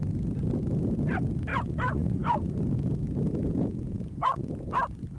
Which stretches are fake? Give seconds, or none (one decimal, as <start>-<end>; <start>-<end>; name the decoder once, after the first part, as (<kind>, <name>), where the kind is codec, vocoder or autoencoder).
1.5-2.6 (vocoder, Vocos); 3.9-4.5